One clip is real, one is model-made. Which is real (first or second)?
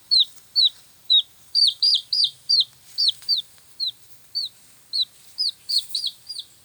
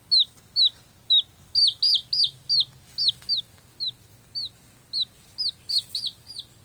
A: second